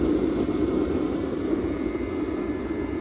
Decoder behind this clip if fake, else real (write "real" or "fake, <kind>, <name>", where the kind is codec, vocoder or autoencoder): real